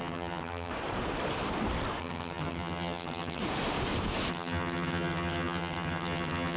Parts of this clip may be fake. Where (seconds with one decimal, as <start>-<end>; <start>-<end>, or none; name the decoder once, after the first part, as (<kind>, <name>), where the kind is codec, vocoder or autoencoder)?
0.0-0.7 (vocoder, HiFi-GAN); 2.0-3.4; 4.3-6.6